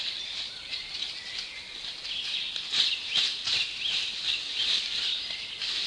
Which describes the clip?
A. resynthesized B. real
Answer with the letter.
A